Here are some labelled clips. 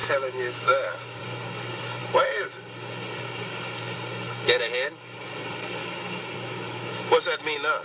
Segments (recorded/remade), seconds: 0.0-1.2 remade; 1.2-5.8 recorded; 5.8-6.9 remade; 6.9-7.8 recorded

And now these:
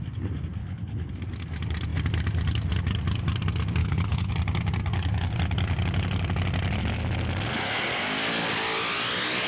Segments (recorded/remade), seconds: 0.0-0.6 recorded; 0.6-1.1 remade; 1.1-3.8 recorded; 3.8-4.3 remade; 4.3-9.5 recorded

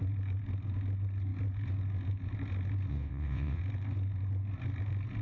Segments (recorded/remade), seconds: 0.0-2.9 recorded; 2.9-3.6 remade; 3.6-5.2 recorded

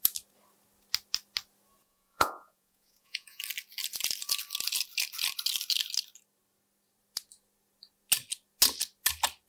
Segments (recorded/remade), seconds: 0.0-1.8 recorded; 1.8-3.4 remade; 3.4-9.5 recorded